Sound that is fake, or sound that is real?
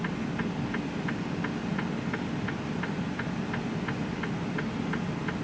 real